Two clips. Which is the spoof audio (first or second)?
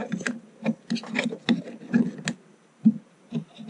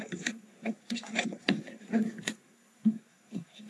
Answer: second